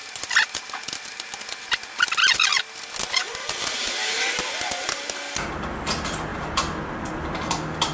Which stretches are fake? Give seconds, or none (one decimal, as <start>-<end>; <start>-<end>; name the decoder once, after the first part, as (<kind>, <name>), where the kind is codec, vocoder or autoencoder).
none